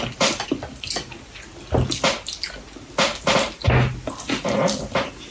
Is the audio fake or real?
real